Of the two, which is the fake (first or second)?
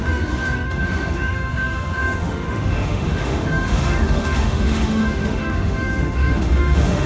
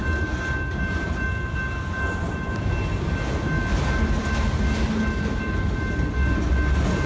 first